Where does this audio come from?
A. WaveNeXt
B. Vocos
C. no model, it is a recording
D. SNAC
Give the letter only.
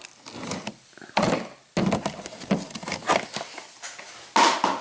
C